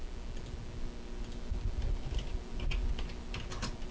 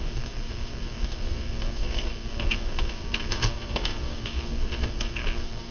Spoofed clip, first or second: second